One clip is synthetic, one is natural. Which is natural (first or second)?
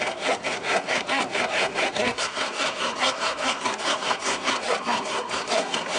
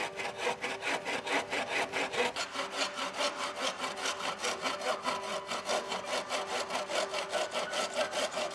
second